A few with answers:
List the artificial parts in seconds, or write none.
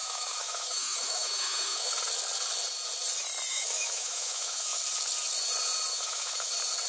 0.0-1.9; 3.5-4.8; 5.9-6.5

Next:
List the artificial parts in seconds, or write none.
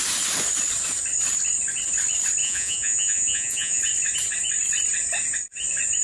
2.4-3.8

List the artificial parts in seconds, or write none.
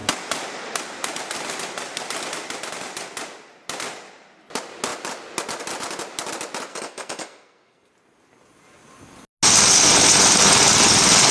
6.7-7.9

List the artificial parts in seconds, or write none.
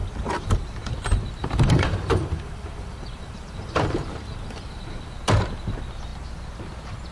0.0-0.9; 1.4-5.2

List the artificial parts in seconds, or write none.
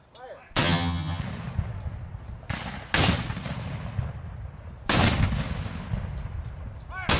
0.6-1.2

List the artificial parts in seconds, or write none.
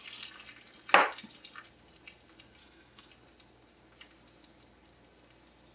2.6-3.1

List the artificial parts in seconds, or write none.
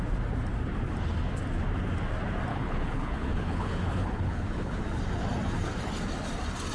2.5-4.8